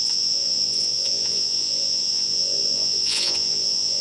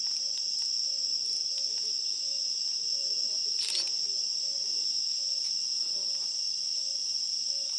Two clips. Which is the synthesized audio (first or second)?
first